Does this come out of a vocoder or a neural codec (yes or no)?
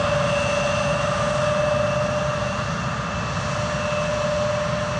no